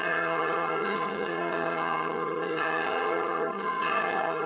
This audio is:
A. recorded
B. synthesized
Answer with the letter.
B